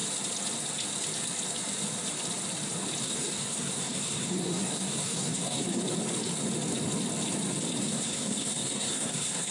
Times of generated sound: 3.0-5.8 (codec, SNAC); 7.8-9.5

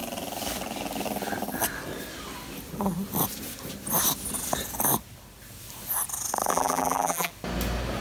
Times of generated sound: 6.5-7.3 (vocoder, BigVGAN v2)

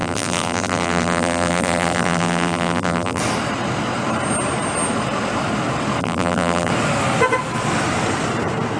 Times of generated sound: 0.0-3.2 (vocoder, BigVGAN v2); 6.0-6.7

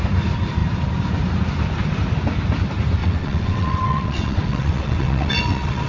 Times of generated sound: 3.0-5.9 (vocoder, WaveNeXt)

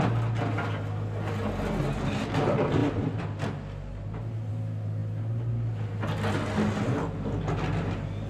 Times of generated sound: none